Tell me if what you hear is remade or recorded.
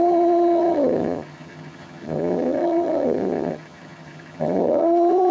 remade